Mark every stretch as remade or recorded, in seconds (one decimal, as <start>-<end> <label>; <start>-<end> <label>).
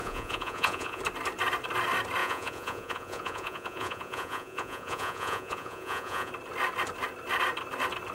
0.0-1.0 remade; 1.0-2.2 recorded; 2.2-6.3 remade; 6.3-8.1 recorded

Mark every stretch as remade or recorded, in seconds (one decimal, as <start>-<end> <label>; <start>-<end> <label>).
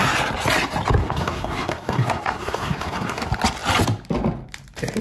0.0-1.0 recorded; 1.0-3.2 remade; 3.2-5.0 recorded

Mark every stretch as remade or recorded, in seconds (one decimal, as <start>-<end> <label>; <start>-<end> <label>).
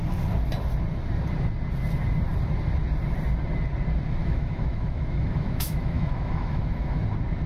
0.0-4.2 recorded; 4.2-7.0 remade; 7.0-7.5 recorded